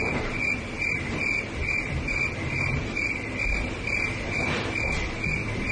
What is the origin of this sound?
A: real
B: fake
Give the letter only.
A